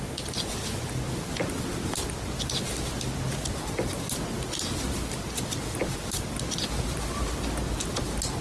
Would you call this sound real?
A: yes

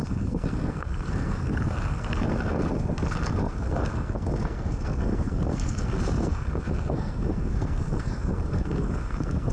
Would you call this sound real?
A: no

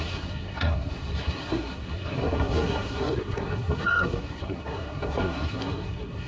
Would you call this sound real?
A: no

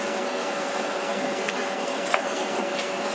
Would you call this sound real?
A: no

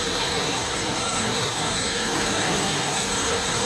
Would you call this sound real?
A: no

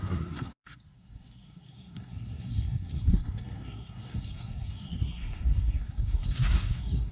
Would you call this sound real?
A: no